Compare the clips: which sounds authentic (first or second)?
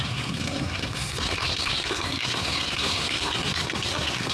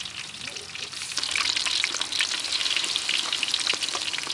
second